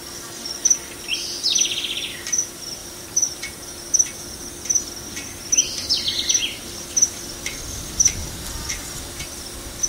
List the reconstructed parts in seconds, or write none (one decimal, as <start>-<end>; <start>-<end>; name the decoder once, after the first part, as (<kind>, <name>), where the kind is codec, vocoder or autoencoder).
2.8-3.8 (vocoder, BigVGAN v2); 5.6-6.3; 8.2-9.2

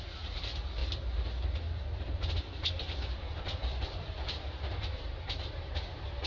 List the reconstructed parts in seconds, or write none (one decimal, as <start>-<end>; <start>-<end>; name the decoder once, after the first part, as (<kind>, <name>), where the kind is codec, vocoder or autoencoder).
3.3-6.3 (vocoder, BigVGAN v2)